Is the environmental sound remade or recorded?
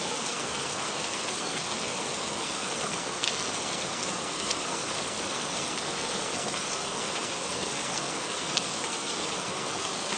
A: remade